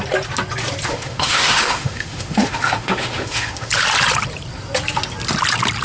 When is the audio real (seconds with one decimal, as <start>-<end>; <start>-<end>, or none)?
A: 0.0-0.9; 3.7-5.8